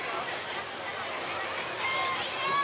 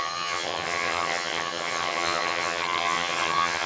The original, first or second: first